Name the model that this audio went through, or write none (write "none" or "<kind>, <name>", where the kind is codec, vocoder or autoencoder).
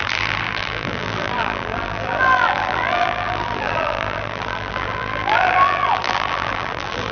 vocoder, BigVGAN v2